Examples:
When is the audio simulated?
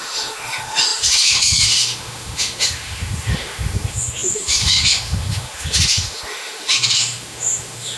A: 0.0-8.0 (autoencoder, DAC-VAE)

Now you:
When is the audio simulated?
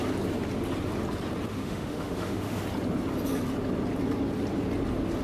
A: 1.5-2.6 (autoencoder, DAC-VAE)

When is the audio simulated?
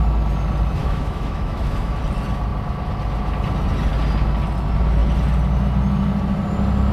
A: 0.8-2.0 (autoencoder, DAC-VAE)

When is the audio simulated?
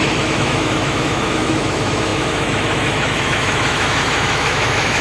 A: 0.0-5.0 (autoencoder, DAC-VAE)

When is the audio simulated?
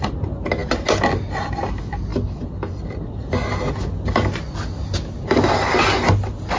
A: none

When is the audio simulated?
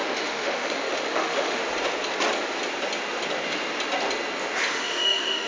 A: 0.0-1.6 (autoencoder, DAC-VAE); 4.7-5.5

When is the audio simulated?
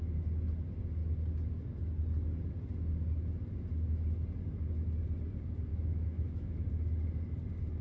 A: 5.7-6.7 (autoencoder, DAC-VAE)